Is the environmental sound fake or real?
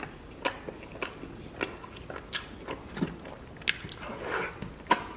real